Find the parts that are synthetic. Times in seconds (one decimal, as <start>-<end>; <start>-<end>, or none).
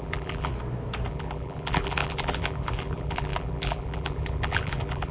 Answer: 0.0-0.5; 1.1-5.1